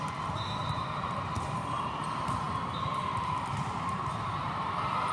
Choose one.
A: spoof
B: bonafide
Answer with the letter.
A